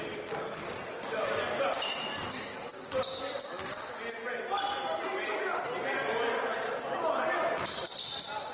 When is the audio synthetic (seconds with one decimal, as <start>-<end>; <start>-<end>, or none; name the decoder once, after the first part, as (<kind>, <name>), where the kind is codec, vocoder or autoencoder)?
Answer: none